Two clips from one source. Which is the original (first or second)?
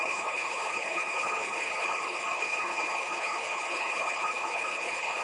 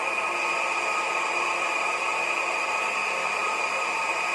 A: second